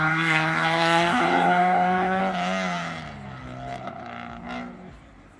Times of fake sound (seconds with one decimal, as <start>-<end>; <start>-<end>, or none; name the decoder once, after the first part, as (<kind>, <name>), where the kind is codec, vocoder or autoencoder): 0.0-2.2 (codec, SNAC)